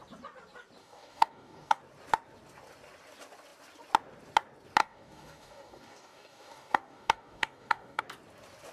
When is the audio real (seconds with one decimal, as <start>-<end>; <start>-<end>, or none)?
0.0-0.8; 1.8-4.8; 8.0-8.7